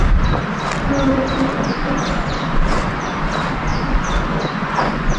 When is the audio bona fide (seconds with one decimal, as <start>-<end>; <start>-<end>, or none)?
0.0-1.5; 3.2-3.7